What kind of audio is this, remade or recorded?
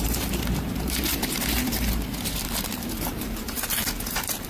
remade